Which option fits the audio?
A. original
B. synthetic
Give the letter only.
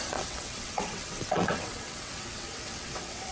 B